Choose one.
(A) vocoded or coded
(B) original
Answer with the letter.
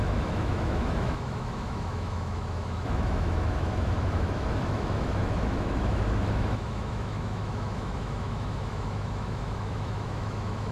A